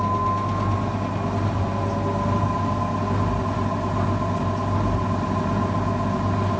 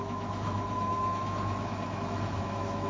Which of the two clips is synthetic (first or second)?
second